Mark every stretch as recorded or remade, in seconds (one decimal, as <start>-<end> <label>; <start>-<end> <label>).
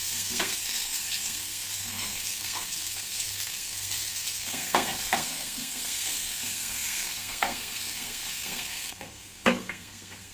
0.0-10.3 remade